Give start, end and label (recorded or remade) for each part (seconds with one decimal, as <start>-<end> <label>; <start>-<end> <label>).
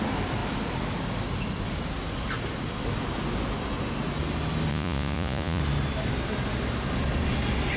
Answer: 0.0-4.7 recorded; 4.7-5.6 remade; 5.6-7.8 recorded